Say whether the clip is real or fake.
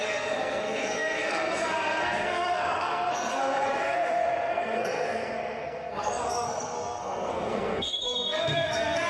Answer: fake